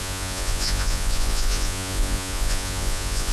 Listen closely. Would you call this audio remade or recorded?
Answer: remade